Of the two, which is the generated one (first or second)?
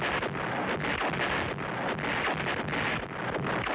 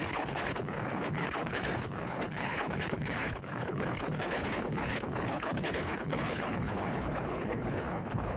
second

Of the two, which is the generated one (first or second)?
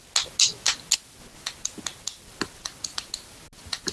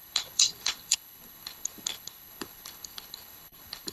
second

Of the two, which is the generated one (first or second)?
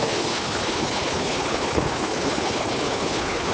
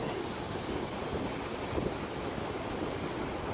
first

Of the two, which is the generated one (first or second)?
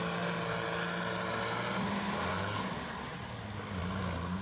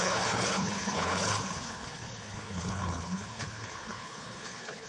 second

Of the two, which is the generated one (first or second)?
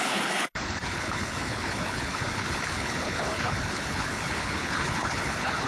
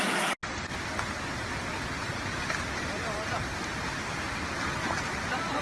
first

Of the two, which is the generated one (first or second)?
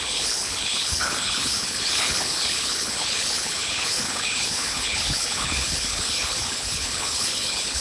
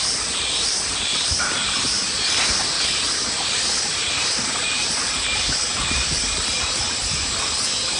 first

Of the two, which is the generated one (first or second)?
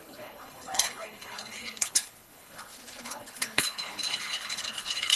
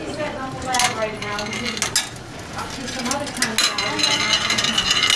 first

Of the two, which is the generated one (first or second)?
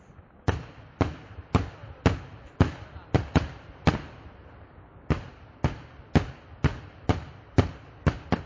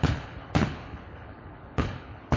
second